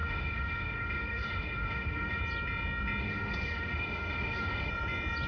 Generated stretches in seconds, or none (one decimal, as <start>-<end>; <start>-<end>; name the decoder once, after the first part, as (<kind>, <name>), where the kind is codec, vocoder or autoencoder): 0.0-2.2 (autoencoder, DAC-VAE); 3.0-4.7